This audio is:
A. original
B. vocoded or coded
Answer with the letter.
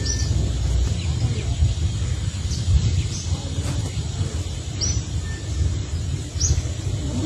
A